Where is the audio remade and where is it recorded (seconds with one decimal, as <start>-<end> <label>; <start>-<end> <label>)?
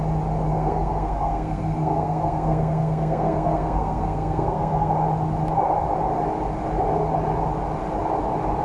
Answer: 0.0-0.5 recorded; 0.5-4.9 remade; 4.9-8.6 recorded